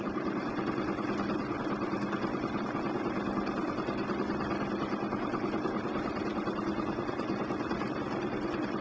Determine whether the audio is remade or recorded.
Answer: recorded